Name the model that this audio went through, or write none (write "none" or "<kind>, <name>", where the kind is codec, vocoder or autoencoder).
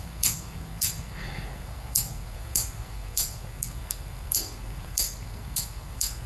codec, SNAC